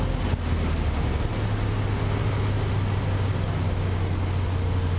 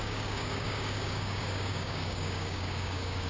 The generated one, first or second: second